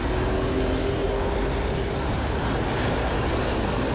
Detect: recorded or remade recorded